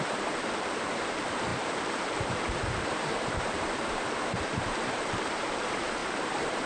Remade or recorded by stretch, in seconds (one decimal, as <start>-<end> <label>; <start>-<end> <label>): 0.0-6.7 remade